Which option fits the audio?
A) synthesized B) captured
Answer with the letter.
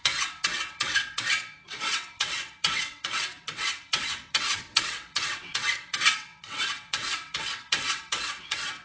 A